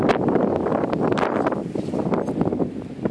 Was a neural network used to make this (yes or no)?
no